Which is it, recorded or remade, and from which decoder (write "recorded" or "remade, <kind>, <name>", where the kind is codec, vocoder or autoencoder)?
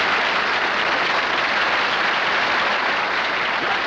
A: recorded